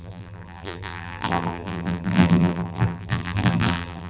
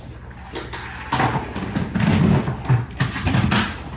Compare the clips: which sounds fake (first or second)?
first